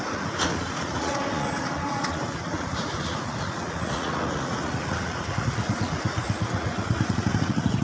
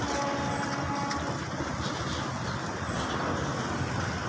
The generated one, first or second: first